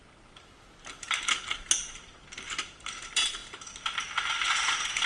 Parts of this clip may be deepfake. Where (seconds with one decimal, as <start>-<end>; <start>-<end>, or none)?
none